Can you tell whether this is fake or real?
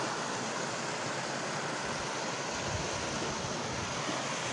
real